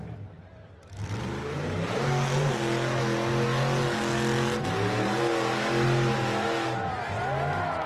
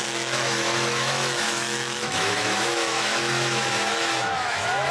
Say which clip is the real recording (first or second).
first